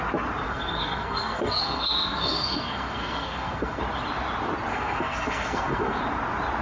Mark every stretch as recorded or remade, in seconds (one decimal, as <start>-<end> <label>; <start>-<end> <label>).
0.0-0.5 recorded; 0.5-3.8 remade; 3.8-4.7 recorded; 4.7-6.0 remade; 6.0-6.6 recorded